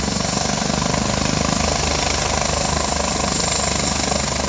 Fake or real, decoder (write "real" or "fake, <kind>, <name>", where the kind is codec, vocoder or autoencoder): real